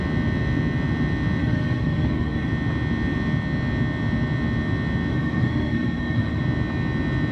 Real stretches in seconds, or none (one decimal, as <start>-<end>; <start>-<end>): 0.0-1.4; 2.5-5.1; 6.4-7.3